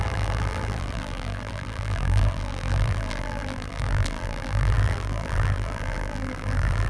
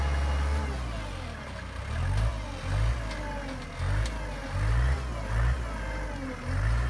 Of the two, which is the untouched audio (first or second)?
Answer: second